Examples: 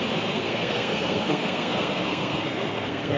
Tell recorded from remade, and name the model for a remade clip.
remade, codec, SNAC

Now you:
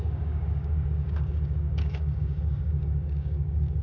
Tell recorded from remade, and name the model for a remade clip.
remade, codec, DAC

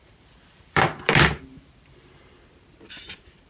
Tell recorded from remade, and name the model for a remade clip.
remade, vocoder, BigVGAN v2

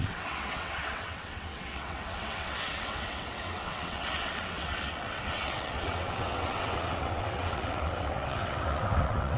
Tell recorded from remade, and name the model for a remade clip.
remade, vocoder, WaveNeXt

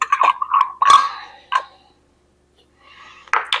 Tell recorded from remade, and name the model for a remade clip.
recorded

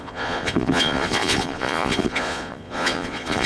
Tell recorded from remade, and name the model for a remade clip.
remade, vocoder, Vocos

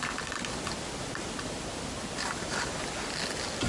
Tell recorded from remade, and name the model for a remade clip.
recorded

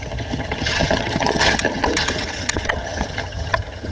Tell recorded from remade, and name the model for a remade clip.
remade, vocoder, HiFi-GAN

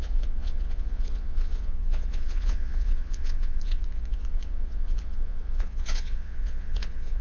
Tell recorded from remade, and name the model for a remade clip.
remade, vocoder, Vocos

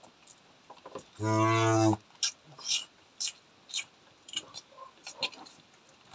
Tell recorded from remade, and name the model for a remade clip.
recorded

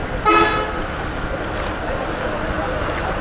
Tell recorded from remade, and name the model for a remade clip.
recorded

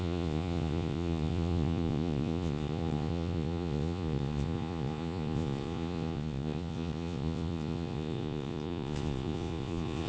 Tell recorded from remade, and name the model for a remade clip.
remade, vocoder, Vocos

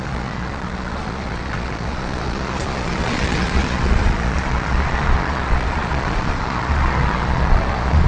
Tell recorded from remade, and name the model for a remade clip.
remade, vocoder, Vocos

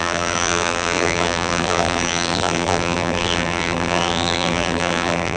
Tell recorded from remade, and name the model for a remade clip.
remade, vocoder, BigVGAN v2